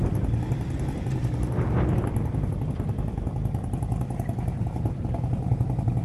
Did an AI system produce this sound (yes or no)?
no